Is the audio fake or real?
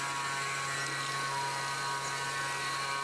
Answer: real